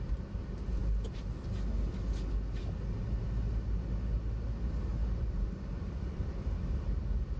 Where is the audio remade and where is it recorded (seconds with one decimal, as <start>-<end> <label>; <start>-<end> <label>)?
0.0-5.0 recorded; 5.0-6.2 remade; 6.2-7.4 recorded